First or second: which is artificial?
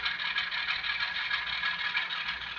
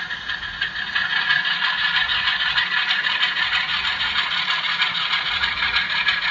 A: second